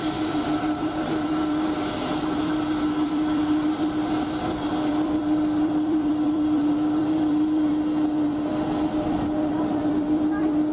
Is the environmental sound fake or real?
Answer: fake